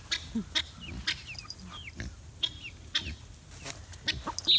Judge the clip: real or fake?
real